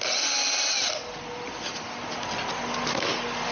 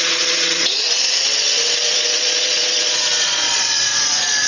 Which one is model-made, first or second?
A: second